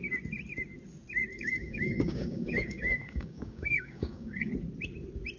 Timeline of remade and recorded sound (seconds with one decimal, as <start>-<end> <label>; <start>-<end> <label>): 0.0-1.3 recorded; 1.3-4.5 remade; 4.5-5.4 recorded